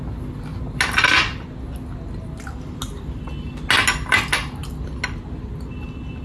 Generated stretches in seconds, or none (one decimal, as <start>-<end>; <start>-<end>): none